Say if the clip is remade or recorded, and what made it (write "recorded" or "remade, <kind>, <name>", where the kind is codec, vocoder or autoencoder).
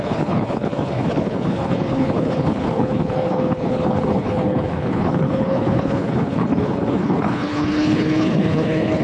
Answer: remade, codec, HILCodec